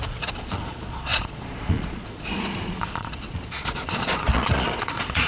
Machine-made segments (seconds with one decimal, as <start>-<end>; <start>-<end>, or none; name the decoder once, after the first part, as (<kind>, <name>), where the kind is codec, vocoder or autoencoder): 0.0-5.3 (vocoder, Vocos)